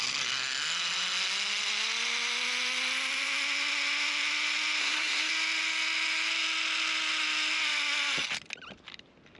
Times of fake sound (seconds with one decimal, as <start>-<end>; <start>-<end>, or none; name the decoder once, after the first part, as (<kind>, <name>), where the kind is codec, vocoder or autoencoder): 4.8-5.3 (codec, SNAC)